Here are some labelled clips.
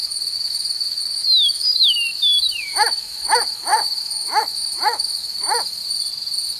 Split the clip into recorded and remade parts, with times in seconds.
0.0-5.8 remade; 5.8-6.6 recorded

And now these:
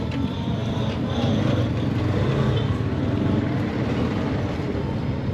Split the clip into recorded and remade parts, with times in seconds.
0.0-5.3 recorded

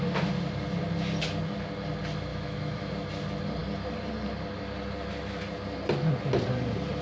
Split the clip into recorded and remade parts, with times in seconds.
0.0-2.3 recorded; 2.3-2.9 remade; 2.9-7.0 recorded

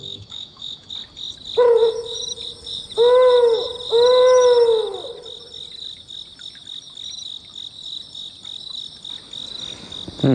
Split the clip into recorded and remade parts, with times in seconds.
0.0-0.9 remade; 0.9-10.3 recorded